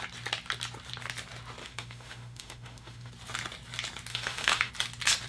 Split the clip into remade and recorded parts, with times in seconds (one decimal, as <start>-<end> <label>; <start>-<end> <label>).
0.0-1.6 recorded; 1.6-3.1 remade; 3.1-4.1 recorded; 4.1-4.7 remade; 4.7-5.3 recorded